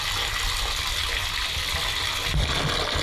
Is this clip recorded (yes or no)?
no